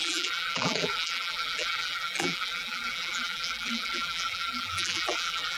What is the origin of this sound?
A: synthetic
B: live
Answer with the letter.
A